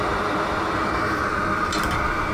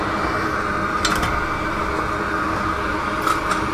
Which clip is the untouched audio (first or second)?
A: second